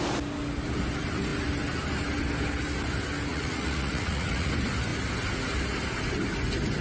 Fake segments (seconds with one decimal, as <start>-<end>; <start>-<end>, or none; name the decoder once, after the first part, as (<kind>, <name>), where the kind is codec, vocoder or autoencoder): 3.3-4.5 (vocoder, Vocos)

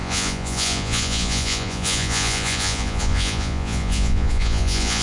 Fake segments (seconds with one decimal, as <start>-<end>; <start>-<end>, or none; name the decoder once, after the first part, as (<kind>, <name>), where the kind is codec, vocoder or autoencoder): 0.0-5.0 (vocoder, Vocos)

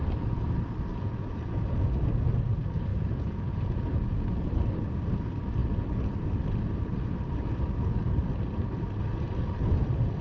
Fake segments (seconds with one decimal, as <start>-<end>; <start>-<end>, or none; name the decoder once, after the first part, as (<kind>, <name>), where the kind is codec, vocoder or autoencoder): 0.9-1.9 (vocoder, Vocos); 2.9-4.5